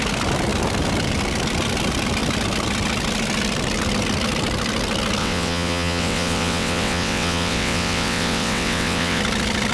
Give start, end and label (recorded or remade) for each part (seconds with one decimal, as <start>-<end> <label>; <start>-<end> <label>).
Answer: 0.0-5.2 recorded; 5.2-9.2 remade; 9.2-9.7 recorded

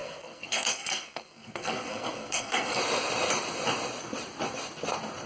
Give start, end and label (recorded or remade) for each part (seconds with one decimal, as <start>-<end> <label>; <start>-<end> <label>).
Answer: 0.0-2.8 remade; 2.8-5.3 recorded

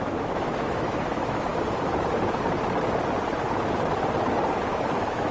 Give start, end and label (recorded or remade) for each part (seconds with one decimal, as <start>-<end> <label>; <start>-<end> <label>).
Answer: 0.0-1.5 remade; 1.5-4.7 recorded; 4.7-5.3 remade

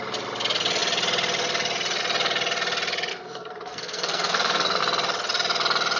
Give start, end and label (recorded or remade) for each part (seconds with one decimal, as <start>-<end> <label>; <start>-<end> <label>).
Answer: 0.0-3.1 recorded; 3.1-4.8 remade; 4.8-6.0 recorded

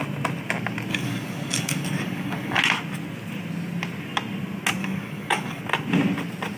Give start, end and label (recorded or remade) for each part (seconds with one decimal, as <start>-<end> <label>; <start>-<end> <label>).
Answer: 0.0-0.9 recorded; 0.9-2.6 remade; 2.6-4.8 recorded; 4.8-5.6 remade; 5.6-6.6 recorded

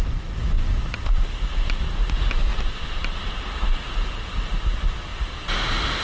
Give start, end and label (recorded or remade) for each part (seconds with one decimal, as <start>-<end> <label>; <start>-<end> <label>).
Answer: 0.0-2.5 recorded; 2.5-4.4 remade; 4.4-6.0 recorded